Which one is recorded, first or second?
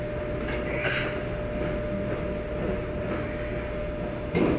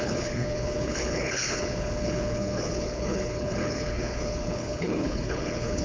first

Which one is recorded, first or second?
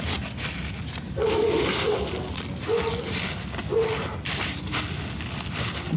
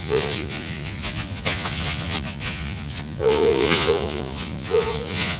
first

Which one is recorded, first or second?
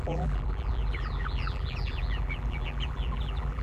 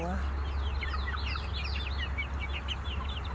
second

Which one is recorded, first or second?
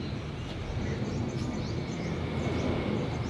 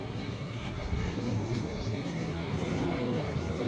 first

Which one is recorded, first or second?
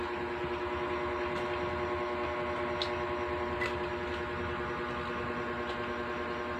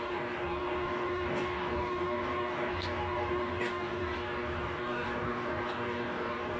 first